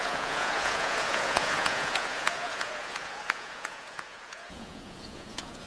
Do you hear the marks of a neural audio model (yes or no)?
yes